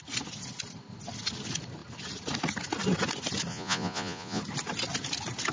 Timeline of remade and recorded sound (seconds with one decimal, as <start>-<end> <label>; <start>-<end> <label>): 0.0-3.5 recorded; 3.5-4.4 remade; 4.4-5.5 recorded